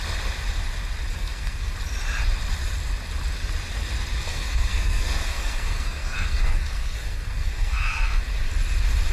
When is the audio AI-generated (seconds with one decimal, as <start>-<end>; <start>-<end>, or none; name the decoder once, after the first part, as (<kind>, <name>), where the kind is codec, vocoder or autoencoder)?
1.1-1.7 (codec, SNAC); 4.3-8.2